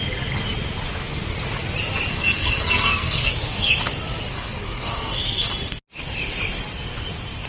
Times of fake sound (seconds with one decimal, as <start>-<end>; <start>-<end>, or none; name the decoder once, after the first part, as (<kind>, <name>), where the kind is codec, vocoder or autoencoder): 2.1-3.9 (codec, SNAC); 4.3-5.5